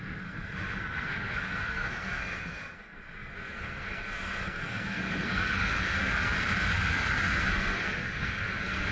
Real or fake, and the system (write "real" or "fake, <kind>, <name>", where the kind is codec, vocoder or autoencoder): fake, codec, SNAC